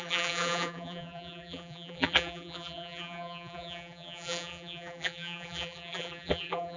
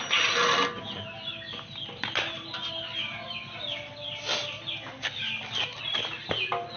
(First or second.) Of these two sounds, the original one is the second